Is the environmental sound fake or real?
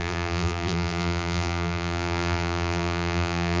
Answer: fake